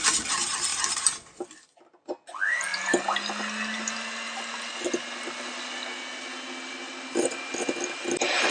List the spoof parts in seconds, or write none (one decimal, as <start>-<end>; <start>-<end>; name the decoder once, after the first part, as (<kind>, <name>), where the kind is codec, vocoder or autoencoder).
none